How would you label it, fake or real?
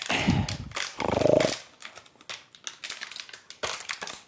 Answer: real